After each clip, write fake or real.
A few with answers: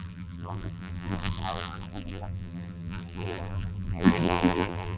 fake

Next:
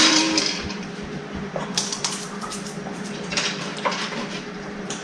fake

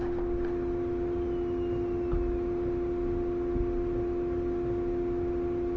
real